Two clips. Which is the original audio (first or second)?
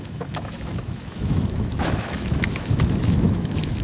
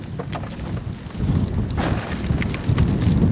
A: second